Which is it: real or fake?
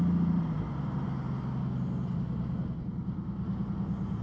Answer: real